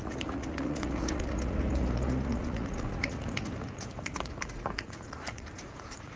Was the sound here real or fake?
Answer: fake